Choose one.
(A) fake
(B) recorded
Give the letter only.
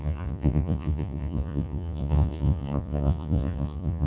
A